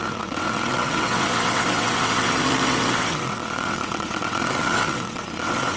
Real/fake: fake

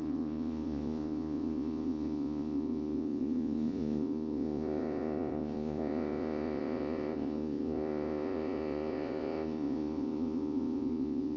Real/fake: fake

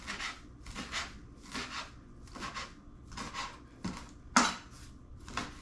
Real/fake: real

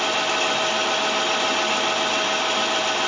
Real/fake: real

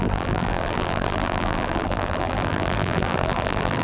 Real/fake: fake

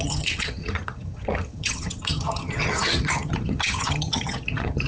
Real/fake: fake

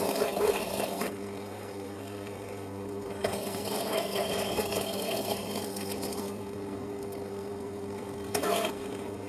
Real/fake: fake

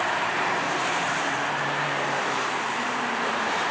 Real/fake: fake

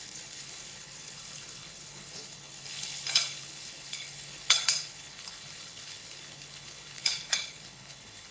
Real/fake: fake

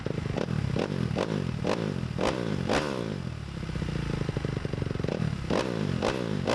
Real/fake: real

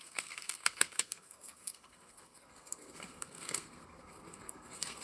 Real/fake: fake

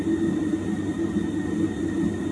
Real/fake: real